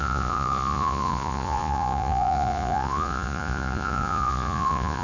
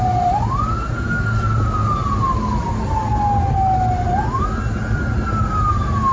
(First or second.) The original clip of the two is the second